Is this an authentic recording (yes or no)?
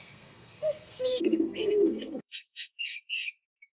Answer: no